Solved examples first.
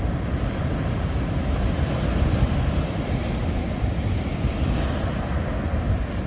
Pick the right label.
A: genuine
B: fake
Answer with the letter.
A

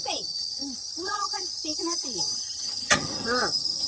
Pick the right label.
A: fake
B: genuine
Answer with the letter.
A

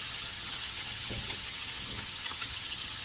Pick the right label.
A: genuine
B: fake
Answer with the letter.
B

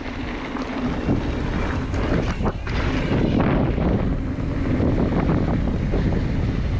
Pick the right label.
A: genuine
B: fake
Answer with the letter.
A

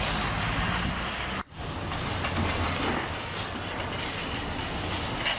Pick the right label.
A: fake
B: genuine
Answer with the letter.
B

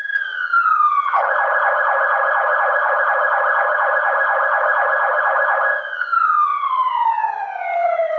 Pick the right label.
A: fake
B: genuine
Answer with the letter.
A